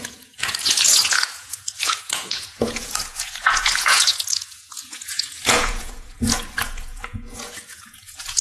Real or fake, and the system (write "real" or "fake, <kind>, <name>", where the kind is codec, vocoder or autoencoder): fake, vocoder, Vocos